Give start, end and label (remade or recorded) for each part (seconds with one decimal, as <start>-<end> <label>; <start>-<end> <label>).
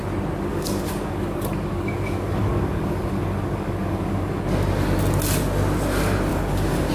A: 0.0-0.5 recorded; 0.5-4.4 remade; 4.4-6.3 recorded; 6.3-6.9 remade